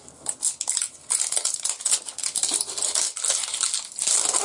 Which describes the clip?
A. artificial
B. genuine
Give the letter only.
B